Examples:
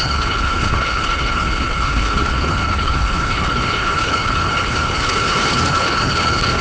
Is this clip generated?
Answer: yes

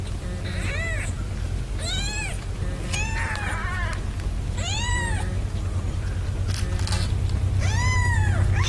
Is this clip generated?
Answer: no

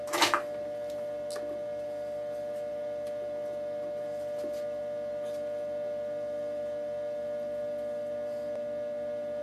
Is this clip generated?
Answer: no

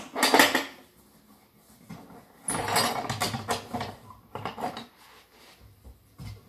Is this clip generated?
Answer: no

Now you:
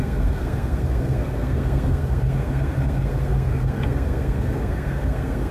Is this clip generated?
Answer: yes